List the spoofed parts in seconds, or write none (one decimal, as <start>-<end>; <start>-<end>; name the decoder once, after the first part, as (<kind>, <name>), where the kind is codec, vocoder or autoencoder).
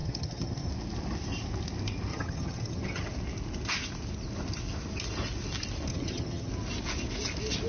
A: 0.0-0.7 (vocoder, HiFi-GAN); 2.1-3.0; 5.9-6.5